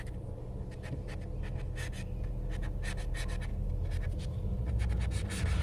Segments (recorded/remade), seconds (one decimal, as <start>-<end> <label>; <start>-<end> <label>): 0.0-5.6 recorded